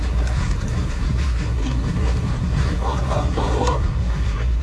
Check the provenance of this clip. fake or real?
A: fake